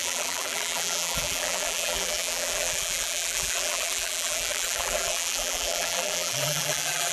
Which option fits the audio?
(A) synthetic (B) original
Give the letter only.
A